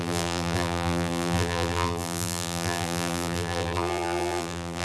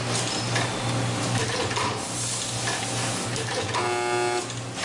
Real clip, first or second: second